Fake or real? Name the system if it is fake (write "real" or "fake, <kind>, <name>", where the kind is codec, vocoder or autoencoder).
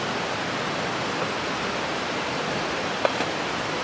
fake, vocoder, BigVGAN v2